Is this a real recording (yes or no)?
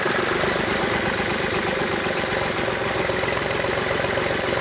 yes